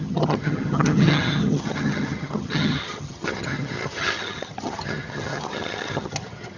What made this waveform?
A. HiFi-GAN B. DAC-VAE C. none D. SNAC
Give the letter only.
A